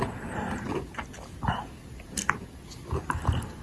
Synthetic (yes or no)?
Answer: no